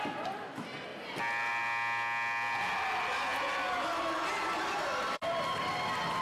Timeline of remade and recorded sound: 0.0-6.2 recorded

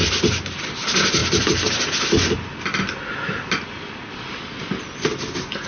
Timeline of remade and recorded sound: 0.0-5.7 recorded

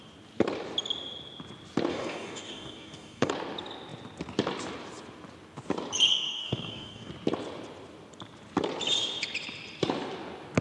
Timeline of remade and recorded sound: 0.0-1.9 recorded; 1.9-3.3 remade; 3.3-6.1 recorded; 6.1-7.1 remade; 7.1-10.6 recorded

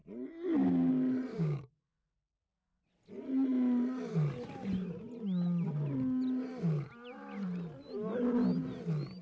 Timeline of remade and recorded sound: 0.0-1.3 recorded; 1.3-2.8 remade; 2.8-9.2 recorded

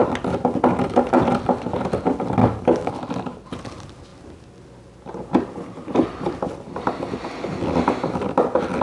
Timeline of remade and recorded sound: 0.0-2.4 recorded; 2.4-2.9 remade; 2.9-8.8 recorded

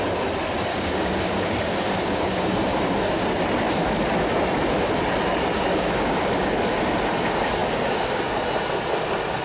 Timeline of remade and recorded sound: 0.0-0.7 recorded; 0.7-3.2 remade; 3.2-5.5 recorded; 5.5-6.6 remade; 6.6-7.6 recorded; 7.6-8.3 remade; 8.3-9.4 recorded

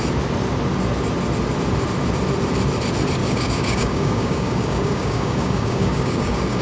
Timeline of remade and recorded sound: 0.0-3.2 recorded; 3.2-6.6 remade

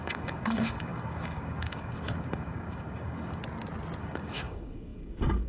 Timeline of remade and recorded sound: 0.0-3.4 remade; 3.4-4.0 recorded; 4.0-5.5 remade